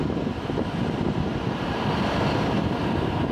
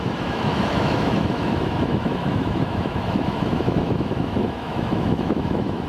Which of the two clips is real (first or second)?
first